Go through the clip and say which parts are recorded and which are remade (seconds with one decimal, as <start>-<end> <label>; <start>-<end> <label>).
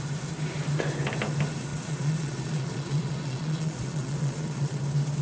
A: 0.0-1.7 recorded; 1.7-4.8 remade; 4.8-5.2 recorded